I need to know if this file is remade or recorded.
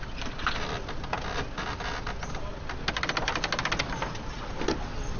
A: recorded